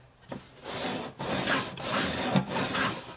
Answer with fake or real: real